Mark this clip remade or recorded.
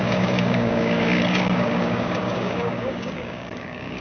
remade